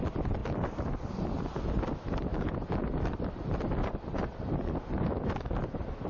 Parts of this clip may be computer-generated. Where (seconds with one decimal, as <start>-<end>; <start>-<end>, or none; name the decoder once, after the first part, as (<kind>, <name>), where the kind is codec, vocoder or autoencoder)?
none

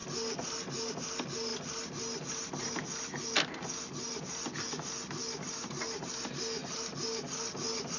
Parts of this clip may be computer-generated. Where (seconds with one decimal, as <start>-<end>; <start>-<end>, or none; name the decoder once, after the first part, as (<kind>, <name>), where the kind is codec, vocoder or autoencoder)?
none

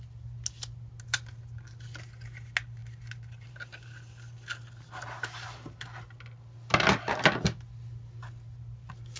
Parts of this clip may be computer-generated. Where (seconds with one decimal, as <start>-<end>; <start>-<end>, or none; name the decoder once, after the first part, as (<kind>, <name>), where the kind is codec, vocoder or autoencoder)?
none

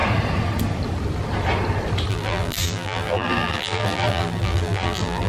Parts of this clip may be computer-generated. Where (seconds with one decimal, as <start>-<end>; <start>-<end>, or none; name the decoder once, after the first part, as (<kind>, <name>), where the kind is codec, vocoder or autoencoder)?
2.1-5.3 (vocoder, BigVGAN v2)